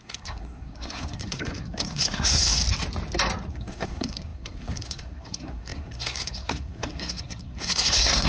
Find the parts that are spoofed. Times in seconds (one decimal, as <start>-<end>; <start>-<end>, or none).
0.0-2.6; 3.5-8.3